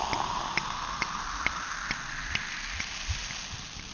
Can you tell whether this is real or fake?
real